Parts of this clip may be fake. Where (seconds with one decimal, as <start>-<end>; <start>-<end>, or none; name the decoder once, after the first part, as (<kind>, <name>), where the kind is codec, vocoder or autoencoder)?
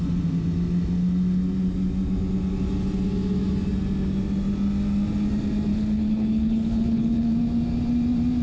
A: 5.7-7.3 (codec, HILCodec)